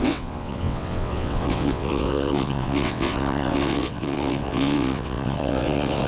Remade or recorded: remade